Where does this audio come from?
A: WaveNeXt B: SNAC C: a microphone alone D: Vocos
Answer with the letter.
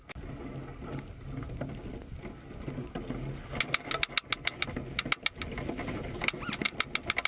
C